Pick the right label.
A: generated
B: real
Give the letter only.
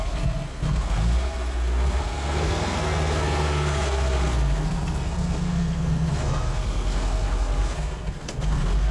A